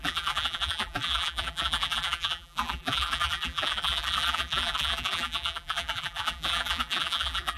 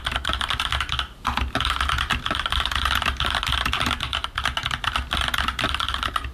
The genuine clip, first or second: second